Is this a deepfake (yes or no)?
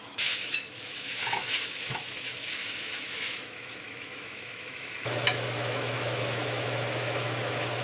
yes